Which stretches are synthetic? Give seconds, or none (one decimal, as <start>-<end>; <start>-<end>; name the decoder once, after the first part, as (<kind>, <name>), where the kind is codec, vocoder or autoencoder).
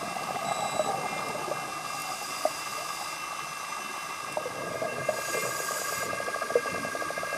2.0-2.7 (vocoder, BigVGAN v2); 3.9-4.9; 5.4-6.3